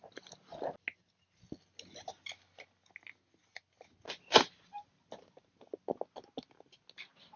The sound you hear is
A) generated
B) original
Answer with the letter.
B